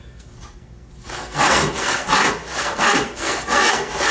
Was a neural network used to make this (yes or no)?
yes